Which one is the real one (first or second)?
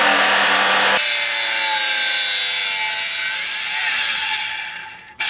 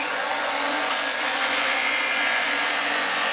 first